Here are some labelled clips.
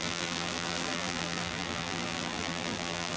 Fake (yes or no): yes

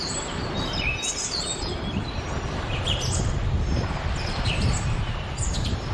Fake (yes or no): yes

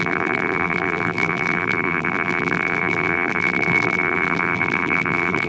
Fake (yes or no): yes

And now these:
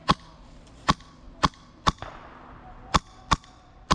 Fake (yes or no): no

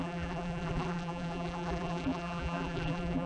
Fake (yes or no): yes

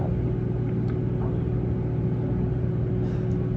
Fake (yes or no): no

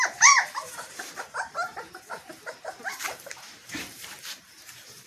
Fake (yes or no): yes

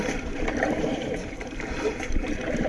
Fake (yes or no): yes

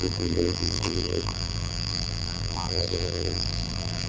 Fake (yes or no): yes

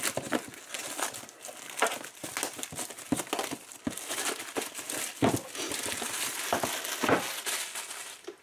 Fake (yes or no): no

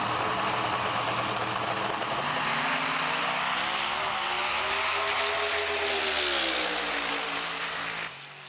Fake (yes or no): no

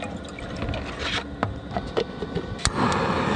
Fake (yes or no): no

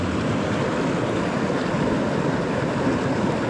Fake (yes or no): no